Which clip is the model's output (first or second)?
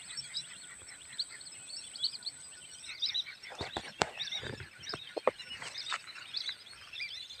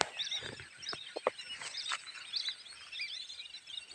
first